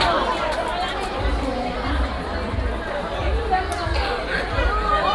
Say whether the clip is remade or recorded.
recorded